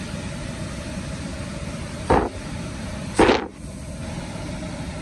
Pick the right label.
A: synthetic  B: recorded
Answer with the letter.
B